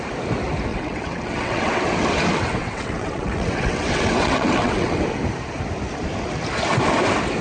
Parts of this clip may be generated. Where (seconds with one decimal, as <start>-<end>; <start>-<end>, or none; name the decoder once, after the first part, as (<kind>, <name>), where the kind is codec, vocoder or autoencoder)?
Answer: 0.7-1.8 (vocoder, WaveNeXt); 2.6-5.0